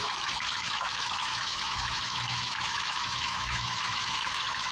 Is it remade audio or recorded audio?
remade